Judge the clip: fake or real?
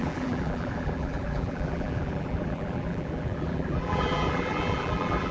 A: fake